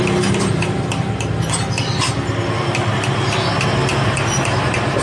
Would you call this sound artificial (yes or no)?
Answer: no